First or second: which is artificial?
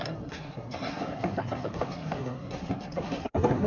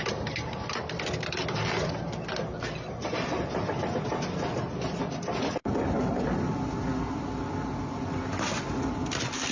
first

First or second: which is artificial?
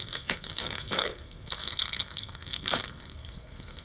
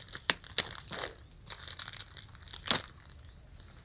first